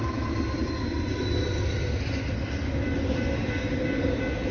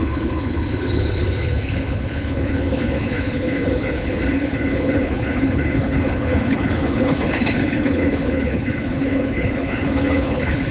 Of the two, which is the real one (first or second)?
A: first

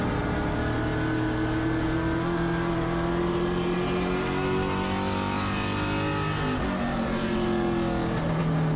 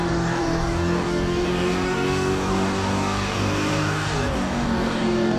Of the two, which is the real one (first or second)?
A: first